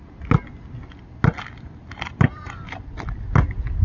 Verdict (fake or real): real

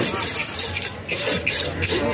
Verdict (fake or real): real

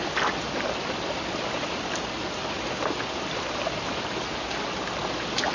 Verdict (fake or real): real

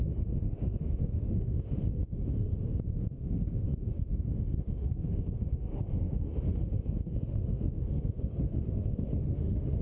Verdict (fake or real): fake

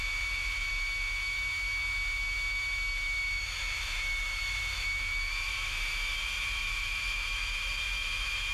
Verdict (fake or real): fake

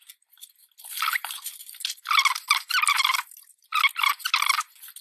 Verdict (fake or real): real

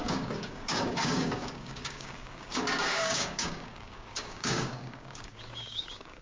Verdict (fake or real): fake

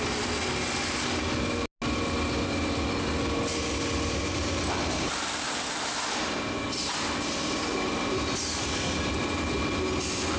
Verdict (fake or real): real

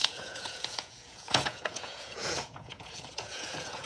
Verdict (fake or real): fake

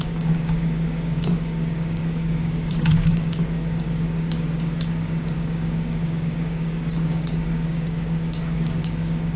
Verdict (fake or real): fake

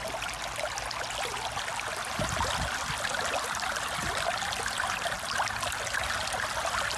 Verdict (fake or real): real